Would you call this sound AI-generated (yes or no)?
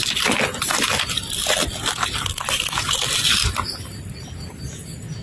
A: no